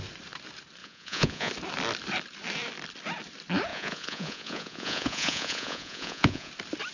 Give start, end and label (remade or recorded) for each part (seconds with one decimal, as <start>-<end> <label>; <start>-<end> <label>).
0.0-0.8 recorded; 0.8-1.5 remade; 1.5-3.7 recorded; 3.7-6.5 remade; 6.5-6.9 recorded